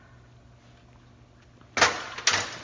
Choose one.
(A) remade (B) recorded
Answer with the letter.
B